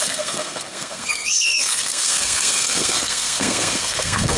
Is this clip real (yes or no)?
no